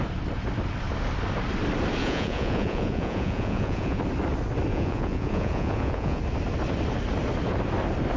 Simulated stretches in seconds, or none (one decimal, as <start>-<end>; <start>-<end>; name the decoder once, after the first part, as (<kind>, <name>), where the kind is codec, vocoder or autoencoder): 2.0-4.0 (vocoder, Vocos); 4.7-6.2